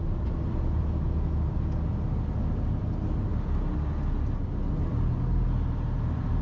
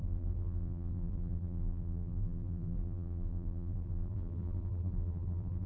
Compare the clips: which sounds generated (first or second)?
second